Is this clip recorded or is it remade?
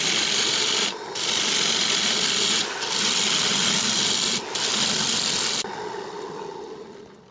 recorded